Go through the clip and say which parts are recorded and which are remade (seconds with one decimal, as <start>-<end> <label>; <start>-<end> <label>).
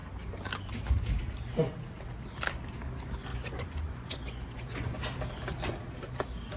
0.0-3.3 recorded; 3.3-5.0 remade; 5.0-6.6 recorded